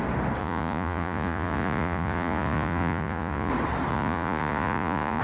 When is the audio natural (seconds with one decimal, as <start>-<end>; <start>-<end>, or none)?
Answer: 0.0-0.4; 3.5-3.9